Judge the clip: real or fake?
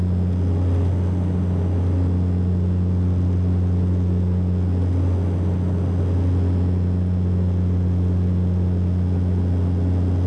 real